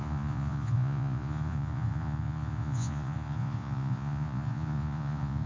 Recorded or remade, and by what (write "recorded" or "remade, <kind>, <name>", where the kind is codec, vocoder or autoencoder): remade, vocoder, Vocos